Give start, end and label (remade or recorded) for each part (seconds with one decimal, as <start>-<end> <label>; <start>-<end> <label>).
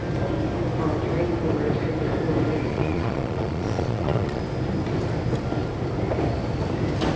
0.0-2.7 recorded; 2.7-4.4 remade; 4.4-7.2 recorded